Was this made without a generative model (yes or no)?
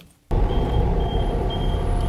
no